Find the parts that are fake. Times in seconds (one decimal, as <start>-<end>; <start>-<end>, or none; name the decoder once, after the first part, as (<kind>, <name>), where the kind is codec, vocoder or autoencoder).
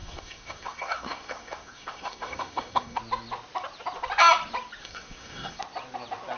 0.0-3.0 (codec, SNAC); 4.8-5.6